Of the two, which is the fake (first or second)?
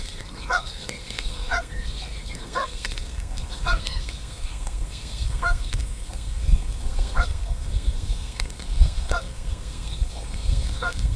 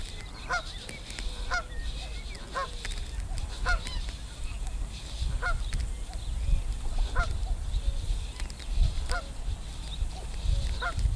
first